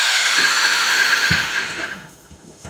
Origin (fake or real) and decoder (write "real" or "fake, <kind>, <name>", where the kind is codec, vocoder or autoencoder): fake, autoencoder, DAC-VAE